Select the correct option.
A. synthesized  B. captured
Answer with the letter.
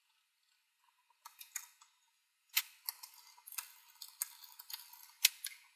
B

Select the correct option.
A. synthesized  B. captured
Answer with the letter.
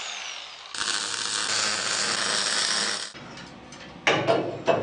B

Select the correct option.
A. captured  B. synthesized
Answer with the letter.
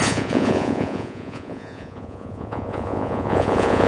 B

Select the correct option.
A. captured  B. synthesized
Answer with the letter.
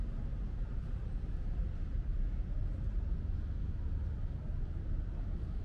A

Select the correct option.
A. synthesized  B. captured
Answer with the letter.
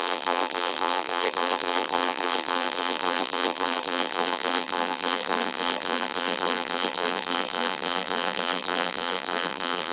A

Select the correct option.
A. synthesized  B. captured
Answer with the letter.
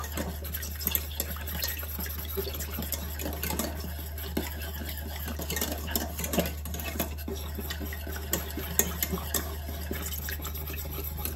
B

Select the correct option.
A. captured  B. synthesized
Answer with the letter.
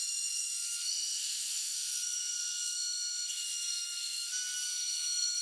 B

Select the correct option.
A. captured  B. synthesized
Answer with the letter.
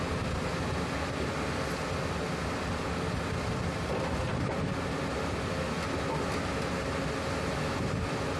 A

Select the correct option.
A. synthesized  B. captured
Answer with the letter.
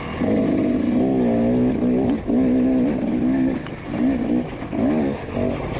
B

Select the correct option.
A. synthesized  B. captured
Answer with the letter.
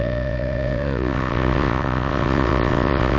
A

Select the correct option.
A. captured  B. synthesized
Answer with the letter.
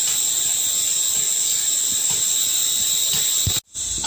A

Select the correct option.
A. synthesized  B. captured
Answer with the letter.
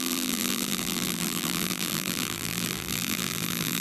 A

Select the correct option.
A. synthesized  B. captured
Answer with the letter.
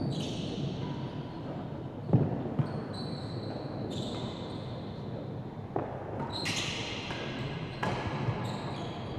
B